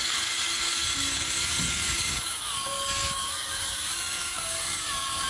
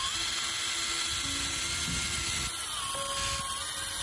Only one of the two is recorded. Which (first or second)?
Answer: second